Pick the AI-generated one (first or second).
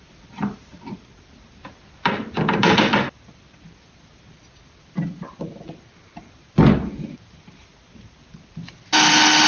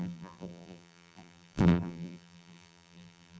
second